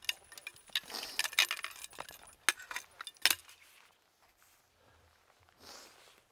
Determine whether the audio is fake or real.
real